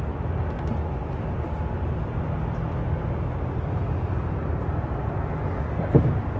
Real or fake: real